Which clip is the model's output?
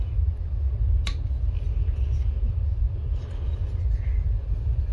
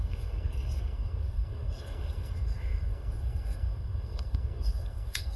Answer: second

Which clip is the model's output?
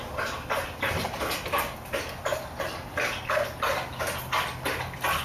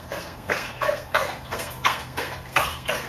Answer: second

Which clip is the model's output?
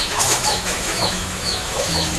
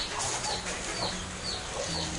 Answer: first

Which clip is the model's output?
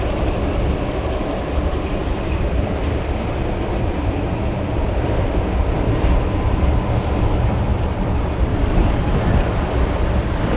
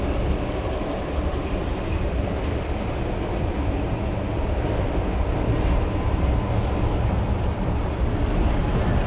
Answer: first